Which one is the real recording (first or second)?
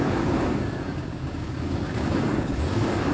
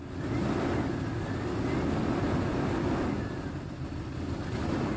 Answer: second